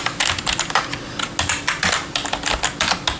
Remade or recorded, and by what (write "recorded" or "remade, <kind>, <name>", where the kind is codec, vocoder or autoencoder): recorded